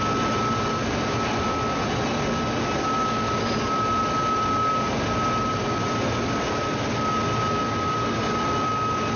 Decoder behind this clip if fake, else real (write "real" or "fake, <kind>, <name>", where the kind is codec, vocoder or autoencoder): real